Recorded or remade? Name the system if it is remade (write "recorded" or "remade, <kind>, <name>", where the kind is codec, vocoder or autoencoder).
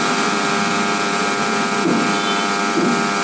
recorded